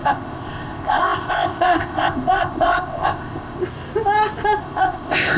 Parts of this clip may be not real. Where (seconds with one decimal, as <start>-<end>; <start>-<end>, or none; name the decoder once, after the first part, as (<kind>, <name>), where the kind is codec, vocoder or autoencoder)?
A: 0.0-3.6 (codec, ZipCodec); 4.6-5.4